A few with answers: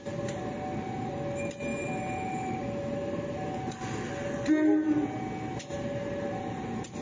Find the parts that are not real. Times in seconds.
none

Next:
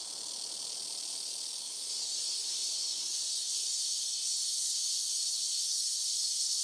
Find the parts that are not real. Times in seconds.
1.6-6.6 (codec, SNAC)

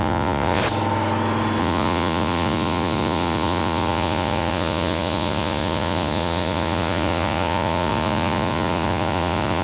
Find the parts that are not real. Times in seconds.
0.0-0.6 (vocoder, Vocos); 1.6-9.6

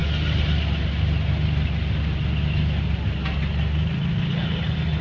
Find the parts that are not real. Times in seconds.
none

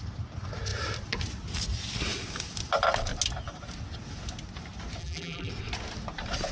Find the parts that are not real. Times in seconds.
5.0-5.5 (vocoder, BigVGAN v2)

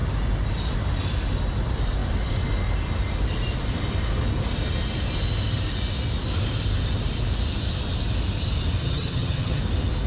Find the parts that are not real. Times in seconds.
8.8-9.6 (vocoder, HiFi-GAN)

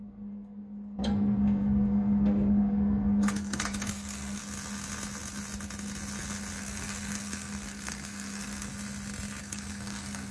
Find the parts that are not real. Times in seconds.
0.0-4.4 (codec, SNAC); 6.6-8.7; 9.4-10.3